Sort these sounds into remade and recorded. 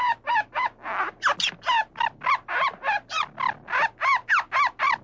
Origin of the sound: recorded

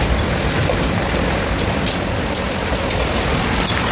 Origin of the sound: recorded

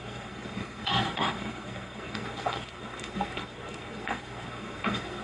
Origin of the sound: remade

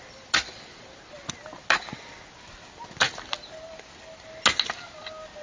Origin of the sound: recorded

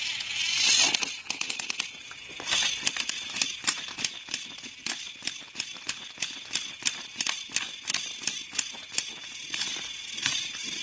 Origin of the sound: recorded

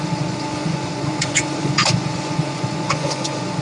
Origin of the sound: remade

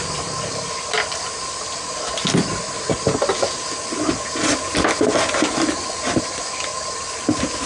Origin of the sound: recorded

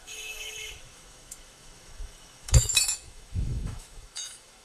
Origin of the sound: remade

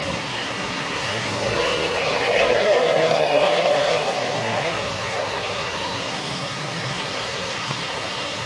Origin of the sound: remade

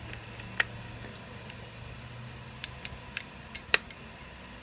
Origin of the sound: recorded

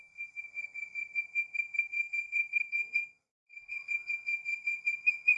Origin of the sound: remade